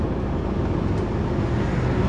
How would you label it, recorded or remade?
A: recorded